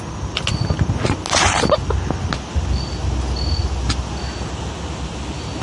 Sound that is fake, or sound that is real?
real